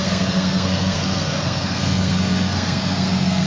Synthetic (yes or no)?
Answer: yes